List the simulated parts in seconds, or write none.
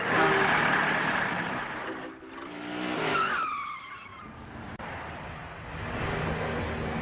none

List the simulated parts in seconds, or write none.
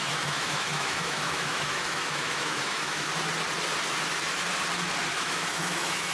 0.0-3.1 (autoencoder, DAC-VAE); 5.1-6.1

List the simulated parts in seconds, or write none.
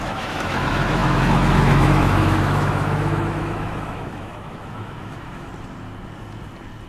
0.0-5.5 (autoencoder, DAC-VAE)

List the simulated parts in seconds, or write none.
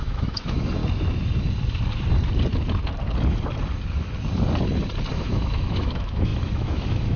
0.0-0.8 (autoencoder, DAC-VAE); 5.1-7.2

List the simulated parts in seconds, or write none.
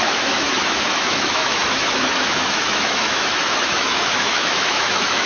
0.0-5.3 (autoencoder, DAC-VAE)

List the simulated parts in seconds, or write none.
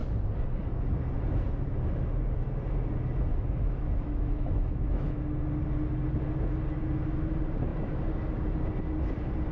3.3-5.2 (autoencoder, DAC-VAE)